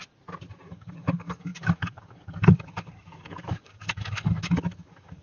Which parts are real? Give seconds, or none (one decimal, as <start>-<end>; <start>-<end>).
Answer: 0.0-0.7